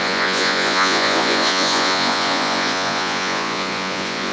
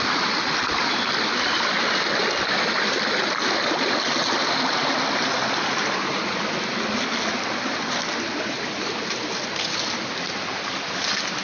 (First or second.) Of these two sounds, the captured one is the second